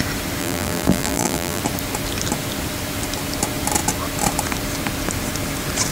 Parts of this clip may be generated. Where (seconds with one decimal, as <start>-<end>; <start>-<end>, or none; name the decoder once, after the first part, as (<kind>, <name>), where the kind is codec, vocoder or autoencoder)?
0.4-1.6 (vocoder, BigVGAN v2)

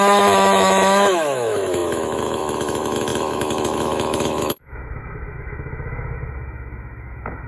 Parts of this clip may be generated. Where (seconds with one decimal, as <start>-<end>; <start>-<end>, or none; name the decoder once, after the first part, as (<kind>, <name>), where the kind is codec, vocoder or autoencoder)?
0.0-7.5 (autoencoder, DAC-VAE)

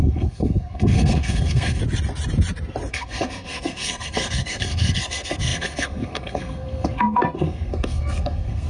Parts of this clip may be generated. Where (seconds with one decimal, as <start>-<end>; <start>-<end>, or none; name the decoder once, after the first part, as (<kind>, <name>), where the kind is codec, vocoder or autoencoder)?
0.0-1.8 (codec, SNAC); 2.9-8.7

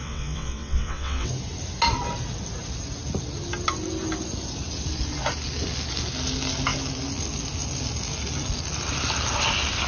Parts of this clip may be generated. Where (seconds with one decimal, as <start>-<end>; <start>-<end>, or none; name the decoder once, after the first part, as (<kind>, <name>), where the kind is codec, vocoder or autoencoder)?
0.0-1.3 (vocoder, WaveNeXt)

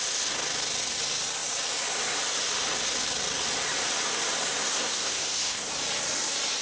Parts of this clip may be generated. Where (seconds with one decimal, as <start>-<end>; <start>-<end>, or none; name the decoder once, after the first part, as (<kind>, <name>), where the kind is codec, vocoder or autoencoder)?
4.6-5.7 (codec, SNAC)